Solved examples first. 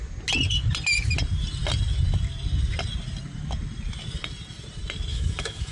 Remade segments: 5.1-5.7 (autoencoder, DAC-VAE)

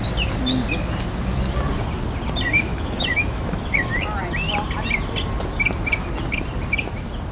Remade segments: 2.7-3.9 (autoencoder, DAC-VAE)

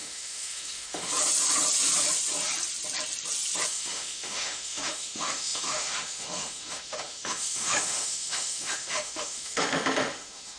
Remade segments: 0.0-1.1 (autoencoder, DAC-VAE); 3.7-10.6

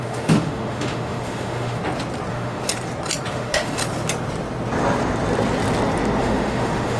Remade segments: 0.0-1.8 (autoencoder, DAC-VAE); 2.3-2.7; 3.3-3.8; 6.2-7.0